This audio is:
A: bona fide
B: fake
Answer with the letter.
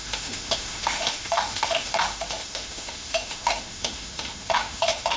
B